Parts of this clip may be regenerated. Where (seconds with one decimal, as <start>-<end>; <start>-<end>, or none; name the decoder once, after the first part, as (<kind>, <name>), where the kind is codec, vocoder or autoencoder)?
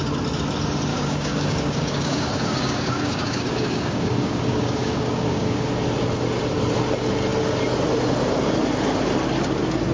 0.9-5.7 (codec, DAC)